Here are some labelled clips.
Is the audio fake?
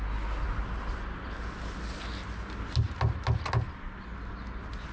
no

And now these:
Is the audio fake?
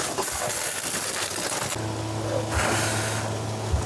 no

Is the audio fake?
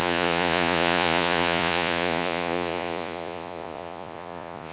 yes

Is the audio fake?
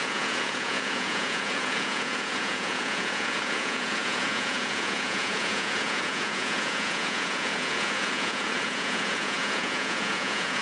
yes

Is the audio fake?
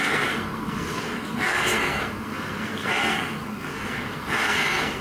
yes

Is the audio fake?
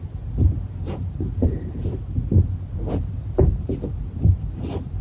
yes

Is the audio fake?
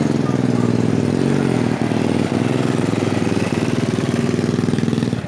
no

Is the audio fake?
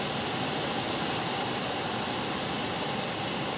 no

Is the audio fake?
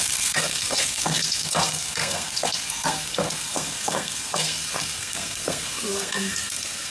yes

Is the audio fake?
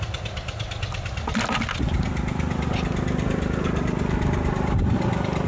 no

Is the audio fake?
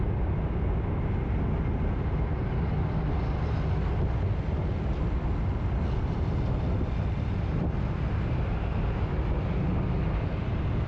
no